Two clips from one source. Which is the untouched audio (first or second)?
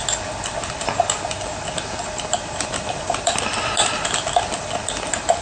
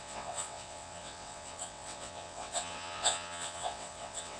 first